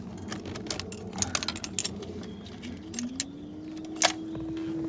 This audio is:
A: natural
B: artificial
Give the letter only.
A